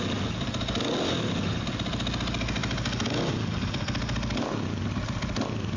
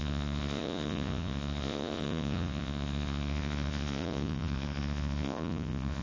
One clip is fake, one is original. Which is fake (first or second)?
second